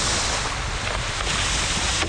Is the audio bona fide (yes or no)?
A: yes